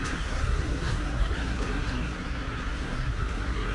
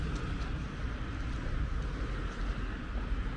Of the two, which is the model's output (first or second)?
first